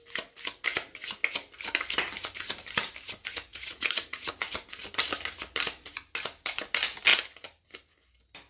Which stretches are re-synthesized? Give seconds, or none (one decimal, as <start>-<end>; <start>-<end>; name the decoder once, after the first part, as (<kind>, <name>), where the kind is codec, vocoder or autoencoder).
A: 3.5-4.3 (vocoder, Vocos)